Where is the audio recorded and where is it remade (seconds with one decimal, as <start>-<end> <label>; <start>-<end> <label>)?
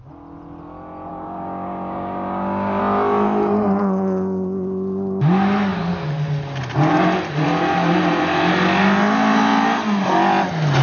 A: 0.0-1.1 recorded; 1.1-2.8 remade; 2.8-10.8 recorded